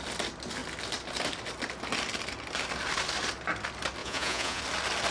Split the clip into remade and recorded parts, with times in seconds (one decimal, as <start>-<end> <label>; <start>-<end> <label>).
0.0-4.0 recorded; 4.0-4.6 remade; 4.6-5.1 recorded